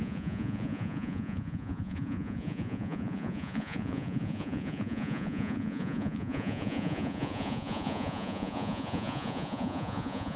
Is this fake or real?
fake